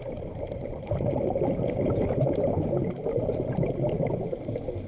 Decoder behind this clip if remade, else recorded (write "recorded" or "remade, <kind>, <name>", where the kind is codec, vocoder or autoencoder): recorded